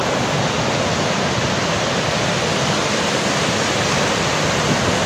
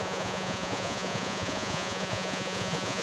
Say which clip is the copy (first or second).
second